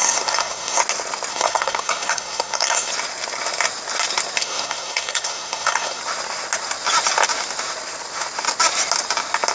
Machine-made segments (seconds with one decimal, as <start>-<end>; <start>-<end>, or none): 0.0-0.8; 1.3-2.9; 4.4-6.0